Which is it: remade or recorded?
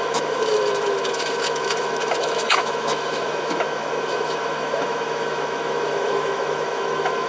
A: remade